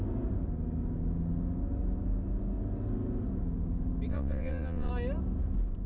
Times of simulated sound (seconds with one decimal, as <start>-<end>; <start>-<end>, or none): 4.1-4.9